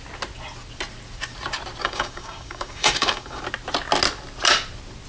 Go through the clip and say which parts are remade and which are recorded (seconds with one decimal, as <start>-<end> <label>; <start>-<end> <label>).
0.0-1.8 recorded; 1.8-3.4 remade; 3.4-5.1 recorded